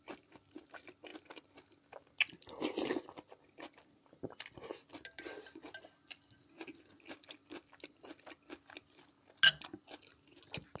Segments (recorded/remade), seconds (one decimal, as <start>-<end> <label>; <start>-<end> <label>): 0.0-10.8 recorded